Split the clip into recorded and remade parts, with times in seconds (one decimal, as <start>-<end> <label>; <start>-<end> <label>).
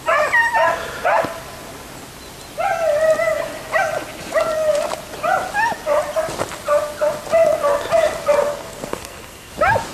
0.0-8.5 recorded; 8.5-9.5 remade; 9.5-9.9 recorded